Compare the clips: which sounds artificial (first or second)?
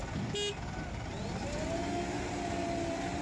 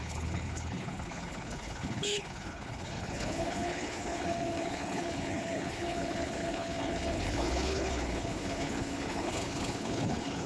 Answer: second